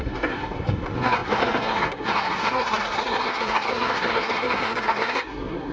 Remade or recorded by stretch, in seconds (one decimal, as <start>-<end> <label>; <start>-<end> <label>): 0.0-5.7 remade